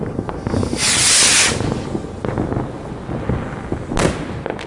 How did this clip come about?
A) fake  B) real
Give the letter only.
B